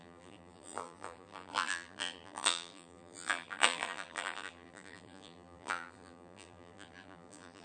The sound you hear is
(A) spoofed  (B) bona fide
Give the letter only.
A